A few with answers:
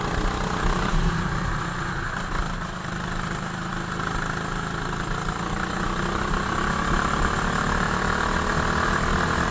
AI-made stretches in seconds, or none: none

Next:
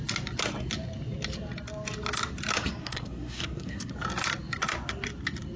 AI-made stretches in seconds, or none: 2.8-3.9 (codec, SNAC)

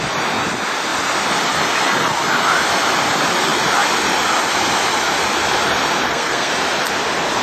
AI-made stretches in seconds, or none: 6.0-6.5 (codec, SNAC)

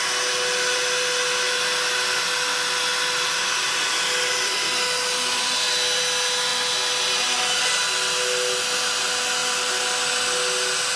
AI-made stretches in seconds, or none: none

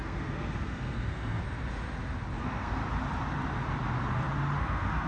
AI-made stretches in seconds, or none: 0.0-1.4 (codec, SNAC); 2.4-2.8; 4.6-5.1

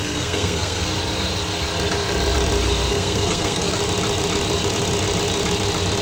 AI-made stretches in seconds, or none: 0.0-0.9 (codec, SNAC); 2.9-3.8